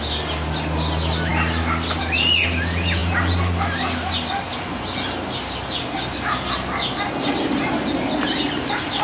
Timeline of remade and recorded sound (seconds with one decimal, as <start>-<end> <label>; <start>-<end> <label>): 0.0-9.0 recorded